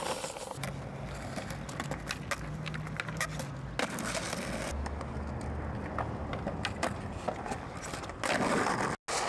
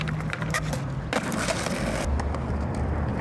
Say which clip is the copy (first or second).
second